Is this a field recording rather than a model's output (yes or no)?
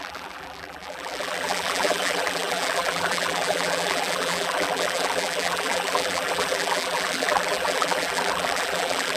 no